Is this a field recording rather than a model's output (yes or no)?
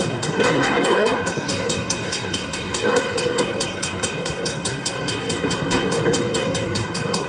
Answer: no